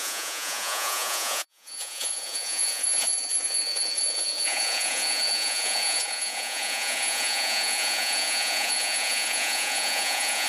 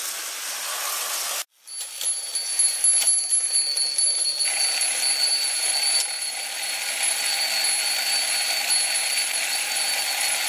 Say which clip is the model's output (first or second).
first